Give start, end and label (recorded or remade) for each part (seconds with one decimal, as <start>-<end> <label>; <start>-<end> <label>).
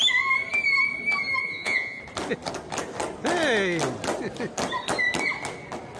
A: 0.0-1.4 recorded; 1.4-2.0 remade; 2.0-6.0 recorded